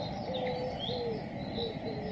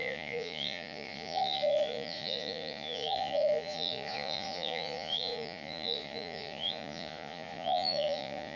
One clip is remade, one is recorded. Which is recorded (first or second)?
first